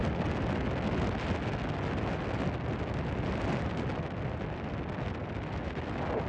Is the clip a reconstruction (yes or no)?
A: no